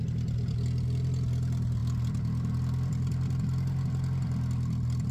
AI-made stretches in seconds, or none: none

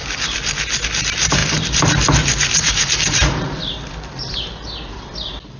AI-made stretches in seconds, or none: 0.0-0.8 (vocoder, BigVGAN v2); 1.4-3.6

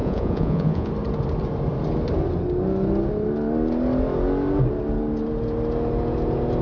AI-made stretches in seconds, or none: 0.0-0.9 (vocoder, Vocos)

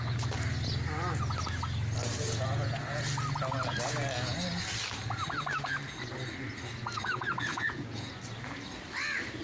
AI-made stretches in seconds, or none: 2.2-3.0 (vocoder, Vocos); 7.5-8.1